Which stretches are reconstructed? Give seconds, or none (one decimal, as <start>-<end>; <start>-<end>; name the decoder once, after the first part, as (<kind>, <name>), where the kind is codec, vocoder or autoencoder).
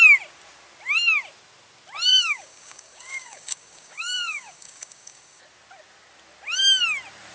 2.1-5.4 (codec, DAC)